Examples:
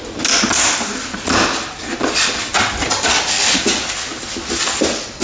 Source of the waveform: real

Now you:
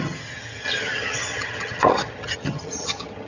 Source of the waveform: fake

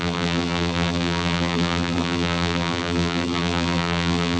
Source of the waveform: fake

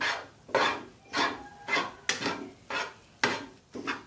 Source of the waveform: real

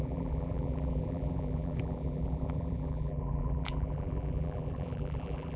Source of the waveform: fake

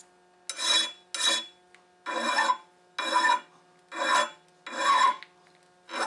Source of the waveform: real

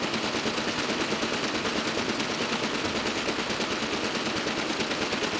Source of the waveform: real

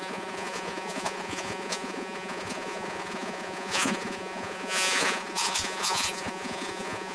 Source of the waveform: fake